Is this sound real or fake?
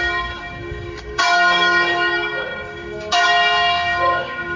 fake